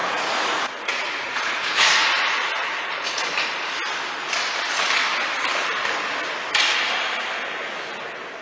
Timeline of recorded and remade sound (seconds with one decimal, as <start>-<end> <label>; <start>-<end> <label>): 0.0-3.2 remade; 3.2-8.4 recorded